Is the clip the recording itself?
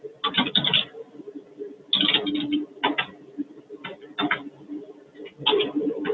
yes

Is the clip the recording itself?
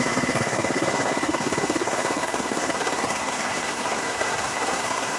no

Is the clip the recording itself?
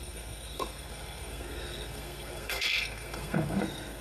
no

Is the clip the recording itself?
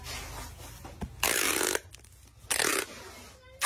yes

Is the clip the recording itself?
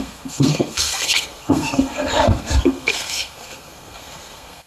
no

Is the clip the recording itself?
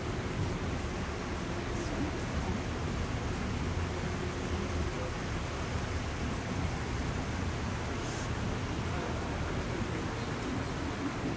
yes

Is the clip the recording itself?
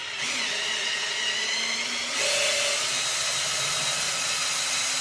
yes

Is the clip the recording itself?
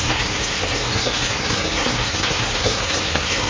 no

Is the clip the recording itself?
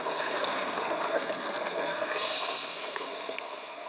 no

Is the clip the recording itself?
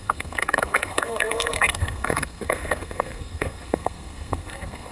no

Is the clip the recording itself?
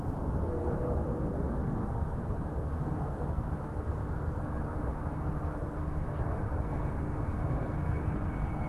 no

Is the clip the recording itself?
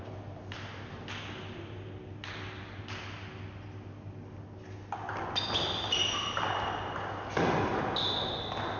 yes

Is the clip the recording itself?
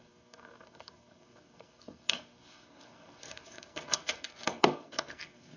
no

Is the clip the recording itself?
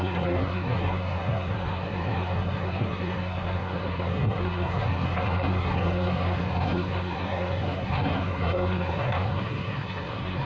no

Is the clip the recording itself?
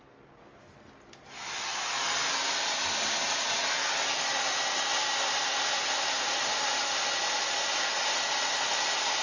yes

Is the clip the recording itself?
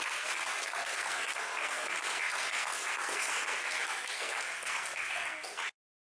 no